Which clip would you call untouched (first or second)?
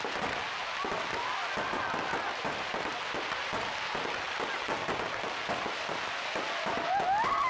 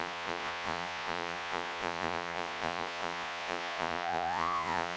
first